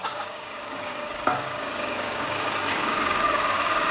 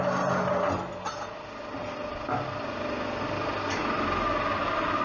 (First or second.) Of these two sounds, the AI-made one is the first